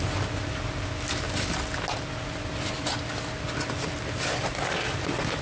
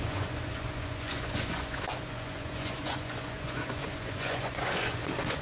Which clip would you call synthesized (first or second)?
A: second